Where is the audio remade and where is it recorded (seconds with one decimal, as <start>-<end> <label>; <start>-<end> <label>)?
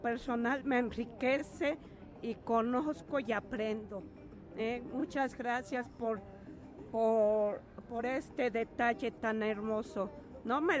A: 0.0-5.0 recorded; 5.0-8.0 remade; 8.0-10.8 recorded